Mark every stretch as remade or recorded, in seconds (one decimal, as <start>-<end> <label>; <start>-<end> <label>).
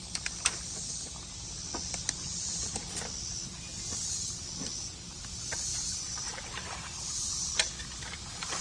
0.0-5.7 recorded; 5.7-7.3 remade; 7.3-8.6 recorded